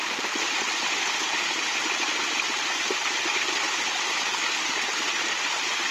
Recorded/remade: recorded